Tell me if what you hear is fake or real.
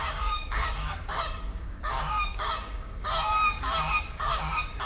fake